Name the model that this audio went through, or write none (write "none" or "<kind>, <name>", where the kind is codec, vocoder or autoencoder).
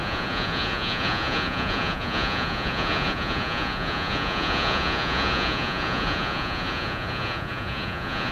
vocoder, Vocos